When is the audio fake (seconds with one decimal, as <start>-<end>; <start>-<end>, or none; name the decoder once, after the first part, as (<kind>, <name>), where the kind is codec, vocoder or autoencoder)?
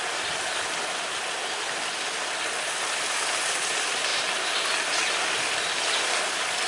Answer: none